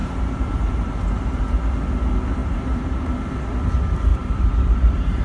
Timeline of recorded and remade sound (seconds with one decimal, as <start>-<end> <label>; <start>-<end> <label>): 0.0-1.4 remade; 1.4-2.4 recorded; 2.4-3.3 remade; 3.3-4.1 recorded; 4.1-5.2 remade